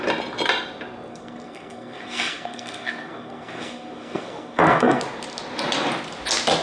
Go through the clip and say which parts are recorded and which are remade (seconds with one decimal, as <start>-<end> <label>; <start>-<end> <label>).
0.0-1.1 recorded; 1.1-5.0 remade; 5.0-6.6 recorded

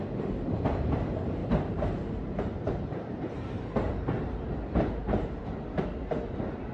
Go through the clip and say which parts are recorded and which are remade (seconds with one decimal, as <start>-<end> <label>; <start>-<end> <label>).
0.0-1.4 recorded; 1.4-5.4 remade; 5.4-6.7 recorded

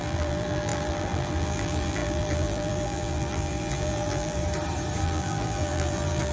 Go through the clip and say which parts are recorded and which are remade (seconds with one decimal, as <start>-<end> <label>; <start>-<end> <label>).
0.0-4.4 remade; 4.4-5.0 recorded; 5.0-6.3 remade

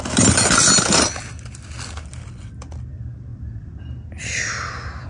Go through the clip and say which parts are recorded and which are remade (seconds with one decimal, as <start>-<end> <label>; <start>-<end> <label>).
0.0-5.1 recorded

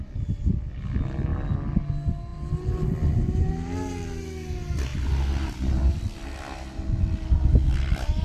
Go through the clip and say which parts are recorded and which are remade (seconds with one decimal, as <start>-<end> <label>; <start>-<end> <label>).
0.0-8.2 recorded

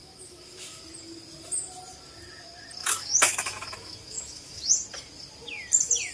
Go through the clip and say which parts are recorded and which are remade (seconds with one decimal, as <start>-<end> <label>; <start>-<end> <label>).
0.0-0.8 remade; 0.8-2.8 recorded; 2.8-4.7 remade; 4.7-6.1 recorded

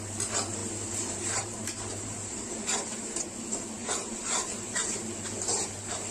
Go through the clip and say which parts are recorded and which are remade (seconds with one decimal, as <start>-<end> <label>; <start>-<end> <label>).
0.0-0.6 recorded; 0.6-3.2 remade; 3.2-3.8 recorded; 3.8-5.0 remade; 5.0-6.1 recorded